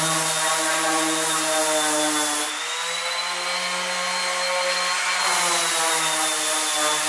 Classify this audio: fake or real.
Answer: real